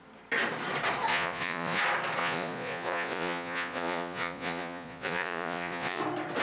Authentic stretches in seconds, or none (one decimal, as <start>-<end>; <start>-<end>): 0.0-1.1; 1.8-2.2; 6.0-6.4